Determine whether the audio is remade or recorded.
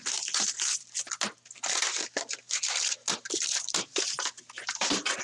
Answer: recorded